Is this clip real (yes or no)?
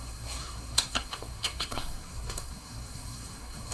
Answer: no